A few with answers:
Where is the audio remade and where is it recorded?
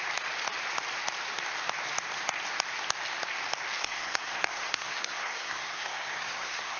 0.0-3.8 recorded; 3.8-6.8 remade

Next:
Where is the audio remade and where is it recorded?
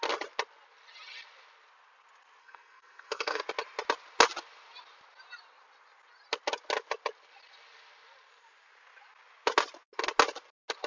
0.0-2.4 recorded; 2.4-3.4 remade; 3.4-10.9 recorded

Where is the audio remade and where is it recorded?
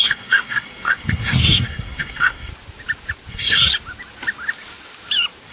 0.0-2.5 remade; 2.5-3.3 recorded; 3.3-3.7 remade; 3.7-5.5 recorded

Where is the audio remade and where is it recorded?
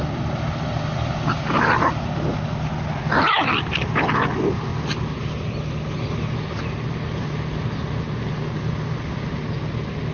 0.0-10.1 recorded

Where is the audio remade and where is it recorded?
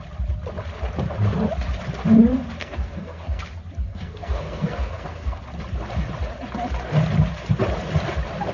0.0-2.6 recorded; 2.6-3.4 remade; 3.4-3.9 recorded; 3.9-5.4 remade; 5.4-8.5 recorded